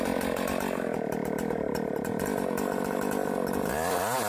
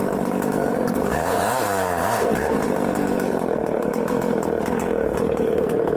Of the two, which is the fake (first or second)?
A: second